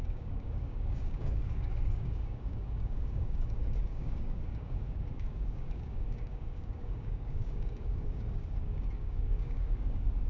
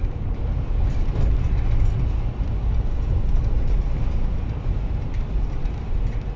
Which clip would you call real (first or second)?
second